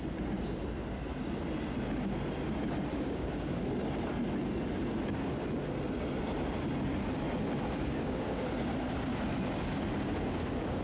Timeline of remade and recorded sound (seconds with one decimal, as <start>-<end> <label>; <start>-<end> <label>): 0.0-2.9 recorded; 2.9-3.6 remade; 3.6-7.8 recorded; 7.8-8.4 remade; 8.4-10.8 recorded